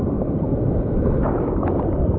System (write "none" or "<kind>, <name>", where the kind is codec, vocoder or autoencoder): none